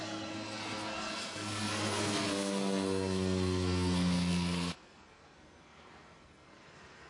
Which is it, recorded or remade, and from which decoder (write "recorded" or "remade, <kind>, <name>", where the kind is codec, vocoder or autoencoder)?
remade, codec, SNAC